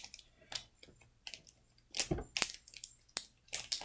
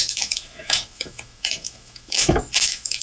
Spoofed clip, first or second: second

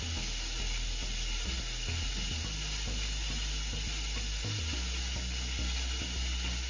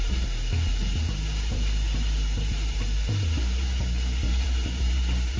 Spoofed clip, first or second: second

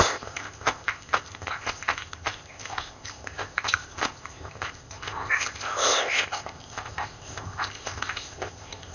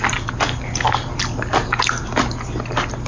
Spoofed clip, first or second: first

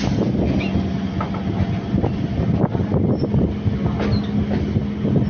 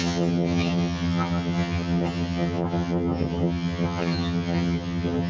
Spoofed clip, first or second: second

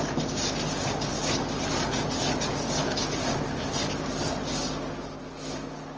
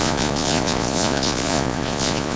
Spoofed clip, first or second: second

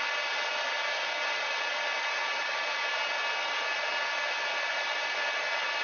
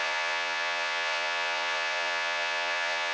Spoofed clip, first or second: second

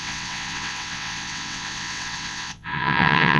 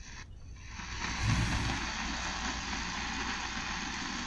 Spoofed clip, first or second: first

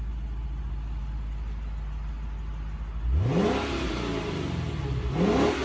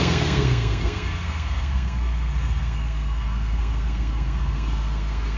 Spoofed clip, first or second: second